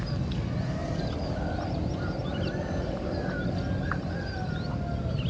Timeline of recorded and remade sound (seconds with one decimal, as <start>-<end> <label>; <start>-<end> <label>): 0.0-0.8 recorded; 0.8-1.9 remade; 1.9-2.3 recorded; 2.3-4.0 remade; 4.0-5.3 recorded